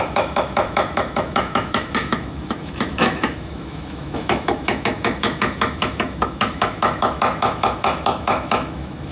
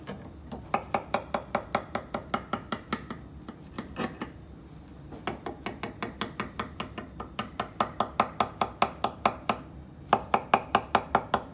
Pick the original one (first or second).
second